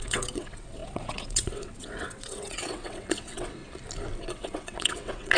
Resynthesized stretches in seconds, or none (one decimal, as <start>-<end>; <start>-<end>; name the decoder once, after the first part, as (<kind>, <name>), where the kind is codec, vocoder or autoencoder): 0.0-3.6 (vocoder, WaveNeXt); 4.2-5.4